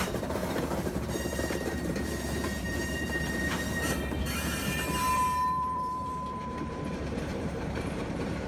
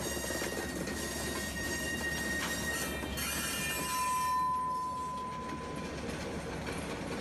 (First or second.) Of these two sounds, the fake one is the first